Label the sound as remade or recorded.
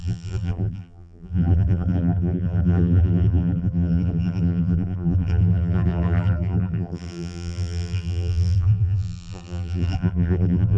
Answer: remade